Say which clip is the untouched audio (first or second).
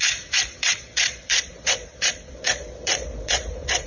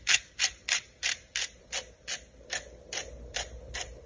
second